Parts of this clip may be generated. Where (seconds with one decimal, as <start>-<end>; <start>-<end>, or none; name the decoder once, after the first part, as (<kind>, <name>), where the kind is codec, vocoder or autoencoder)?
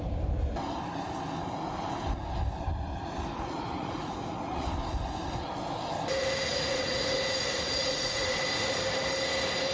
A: 2.9-4.7 (vocoder, Vocos); 6.5-8.4